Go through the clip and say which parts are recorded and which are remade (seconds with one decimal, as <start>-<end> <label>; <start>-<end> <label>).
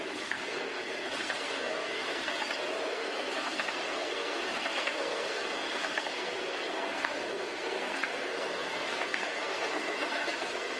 0.0-2.3 remade; 2.3-2.9 recorded; 2.9-10.8 remade